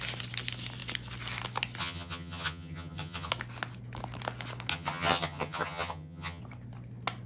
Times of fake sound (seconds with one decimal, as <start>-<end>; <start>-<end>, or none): 1.8-3.3; 4.7-6.4